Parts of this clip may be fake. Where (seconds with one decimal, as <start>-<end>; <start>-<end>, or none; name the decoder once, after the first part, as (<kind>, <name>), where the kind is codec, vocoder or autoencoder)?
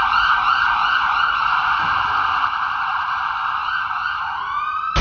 0.8-1.9 (vocoder, Vocos)